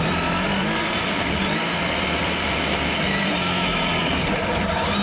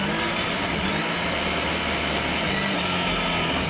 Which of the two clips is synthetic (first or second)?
first